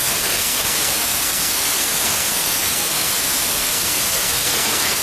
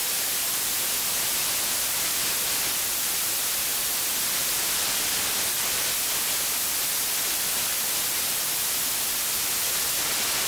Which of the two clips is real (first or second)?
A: second